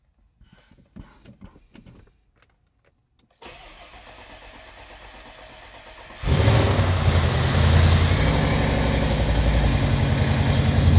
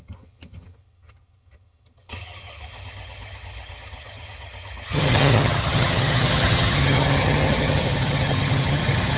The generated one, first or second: second